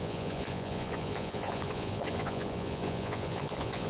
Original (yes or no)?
no